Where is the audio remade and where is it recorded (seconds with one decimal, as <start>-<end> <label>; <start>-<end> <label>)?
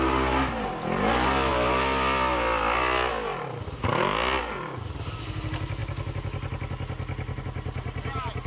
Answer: 0.0-8.5 recorded